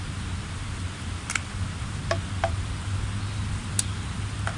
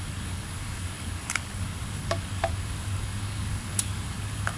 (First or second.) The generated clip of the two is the second